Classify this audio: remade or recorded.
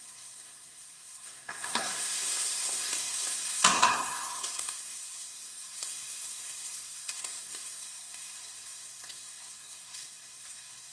remade